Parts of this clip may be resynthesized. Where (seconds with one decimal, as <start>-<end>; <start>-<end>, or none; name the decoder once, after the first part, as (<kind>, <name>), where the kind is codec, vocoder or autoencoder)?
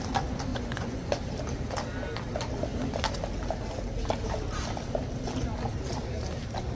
0.5-1.1 (vocoder, Vocos)